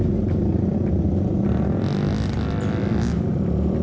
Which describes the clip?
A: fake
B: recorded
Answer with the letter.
B